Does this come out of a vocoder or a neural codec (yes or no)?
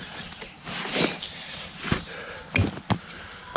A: no